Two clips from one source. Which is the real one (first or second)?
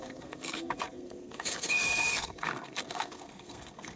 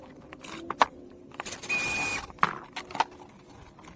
second